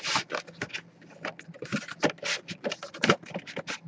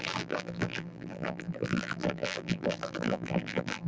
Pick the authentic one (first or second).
first